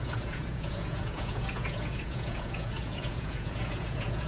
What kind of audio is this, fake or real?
fake